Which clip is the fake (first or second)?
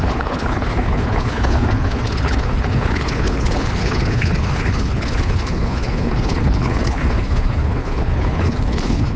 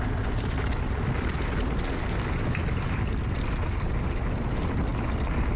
first